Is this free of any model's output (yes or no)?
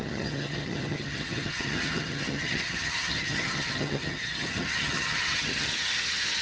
no